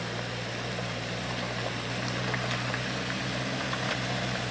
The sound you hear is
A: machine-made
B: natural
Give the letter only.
B